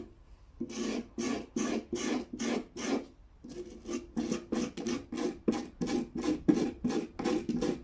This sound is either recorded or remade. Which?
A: recorded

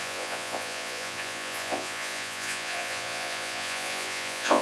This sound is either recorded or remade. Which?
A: remade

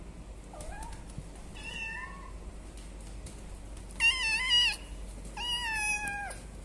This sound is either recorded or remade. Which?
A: recorded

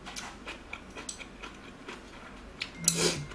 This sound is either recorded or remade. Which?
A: recorded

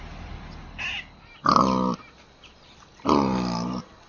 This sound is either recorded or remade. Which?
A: recorded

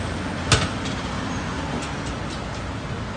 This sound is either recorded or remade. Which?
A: recorded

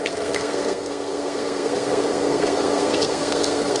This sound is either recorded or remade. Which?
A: remade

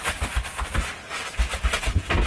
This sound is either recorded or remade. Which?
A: recorded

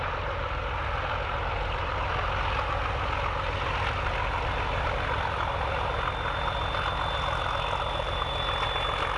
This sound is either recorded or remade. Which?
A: recorded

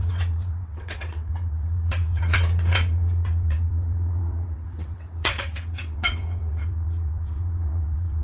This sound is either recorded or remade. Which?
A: remade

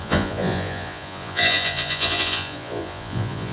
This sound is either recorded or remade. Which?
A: remade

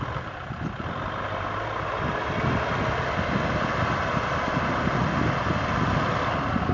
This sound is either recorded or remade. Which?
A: recorded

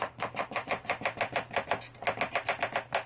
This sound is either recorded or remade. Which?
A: recorded